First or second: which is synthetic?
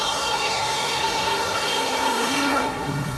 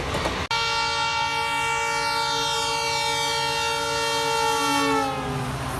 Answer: first